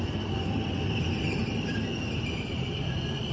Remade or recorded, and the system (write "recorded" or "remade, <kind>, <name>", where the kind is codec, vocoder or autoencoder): recorded